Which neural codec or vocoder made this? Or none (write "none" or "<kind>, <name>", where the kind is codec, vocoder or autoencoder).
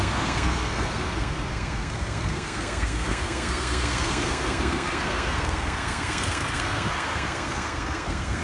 codec, SNAC